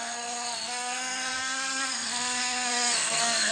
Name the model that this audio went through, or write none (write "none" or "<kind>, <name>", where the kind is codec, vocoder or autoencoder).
codec, SNAC